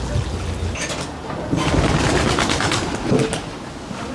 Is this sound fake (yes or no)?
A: no